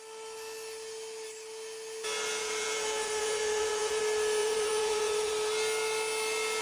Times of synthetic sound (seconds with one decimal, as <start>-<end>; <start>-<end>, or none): 2.4-4.0; 4.4-5.3